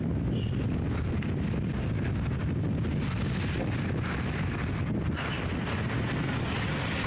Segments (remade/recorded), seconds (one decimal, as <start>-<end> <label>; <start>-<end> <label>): 0.0-7.1 recorded